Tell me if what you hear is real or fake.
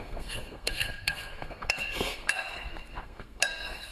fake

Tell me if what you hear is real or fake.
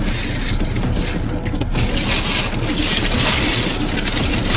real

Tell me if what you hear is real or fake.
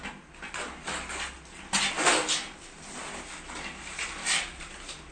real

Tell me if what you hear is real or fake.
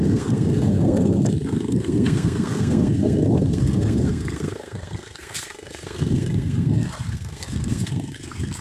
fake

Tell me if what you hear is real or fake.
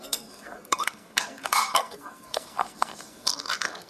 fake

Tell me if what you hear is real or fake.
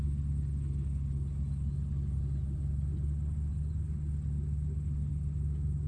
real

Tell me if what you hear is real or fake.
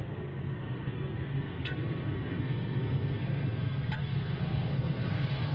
fake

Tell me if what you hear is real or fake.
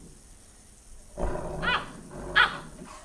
real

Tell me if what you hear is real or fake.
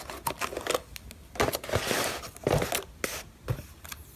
real